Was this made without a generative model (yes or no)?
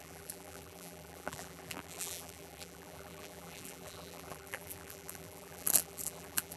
no